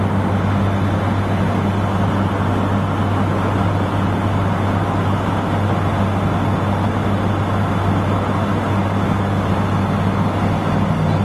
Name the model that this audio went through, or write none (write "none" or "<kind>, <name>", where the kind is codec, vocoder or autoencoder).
none